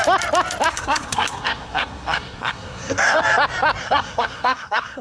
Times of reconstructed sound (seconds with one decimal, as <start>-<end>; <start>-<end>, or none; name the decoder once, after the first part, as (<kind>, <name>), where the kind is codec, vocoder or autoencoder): 0.7-3.2 (codec, SNAC); 3.8-5.0